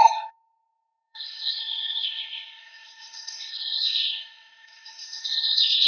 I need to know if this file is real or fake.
fake